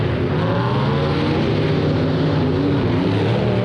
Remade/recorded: recorded